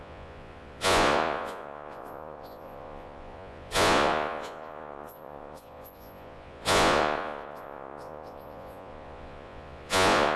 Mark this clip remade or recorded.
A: remade